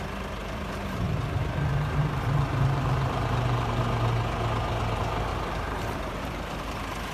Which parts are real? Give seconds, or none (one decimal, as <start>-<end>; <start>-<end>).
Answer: 0.0-0.4; 3.8-5.3; 6.6-7.1